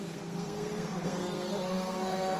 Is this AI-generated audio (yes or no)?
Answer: yes